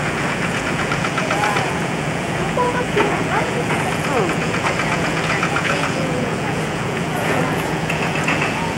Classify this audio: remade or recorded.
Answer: remade